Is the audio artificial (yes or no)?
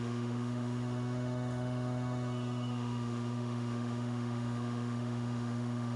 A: yes